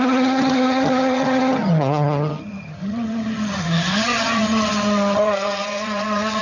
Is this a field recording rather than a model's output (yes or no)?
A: no